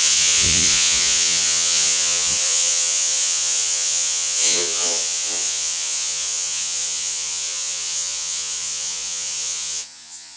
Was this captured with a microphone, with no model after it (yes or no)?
no